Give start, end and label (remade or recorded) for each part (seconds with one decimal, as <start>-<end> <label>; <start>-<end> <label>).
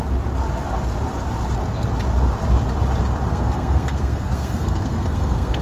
0.0-3.3 recorded; 3.3-5.6 remade